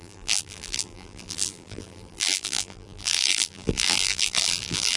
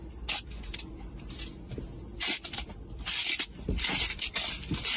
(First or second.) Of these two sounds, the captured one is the second